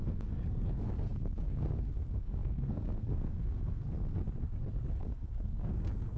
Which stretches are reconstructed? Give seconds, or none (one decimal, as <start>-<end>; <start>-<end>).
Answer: 0.0-4.2; 4.9-6.2